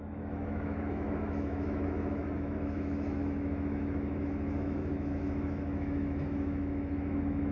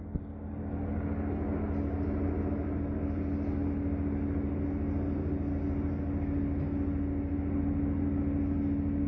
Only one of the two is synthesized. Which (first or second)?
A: first